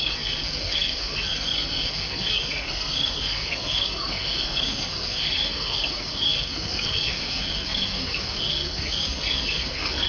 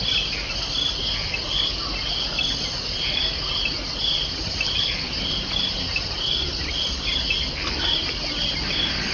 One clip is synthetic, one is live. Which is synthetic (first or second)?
first